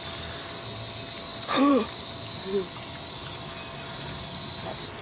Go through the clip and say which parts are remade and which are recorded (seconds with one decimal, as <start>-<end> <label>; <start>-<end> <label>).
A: 0.0-5.0 recorded